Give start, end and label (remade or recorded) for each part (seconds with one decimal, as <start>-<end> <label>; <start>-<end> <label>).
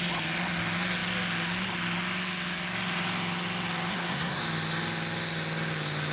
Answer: 0.0-3.9 recorded; 3.9-4.4 remade; 4.4-6.1 recorded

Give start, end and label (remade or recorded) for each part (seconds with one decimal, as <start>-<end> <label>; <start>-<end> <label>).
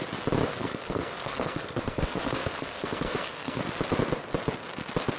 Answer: 0.0-0.5 recorded; 0.5-3.6 remade; 3.6-5.2 recorded